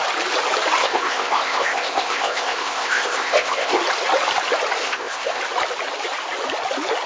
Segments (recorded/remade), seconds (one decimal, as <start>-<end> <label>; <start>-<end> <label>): 0.0-0.8 recorded; 0.8-3.8 remade; 3.8-4.8 recorded; 4.8-5.4 remade; 5.4-7.1 recorded